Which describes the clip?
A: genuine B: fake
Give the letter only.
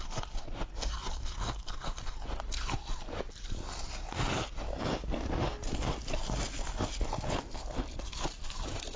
A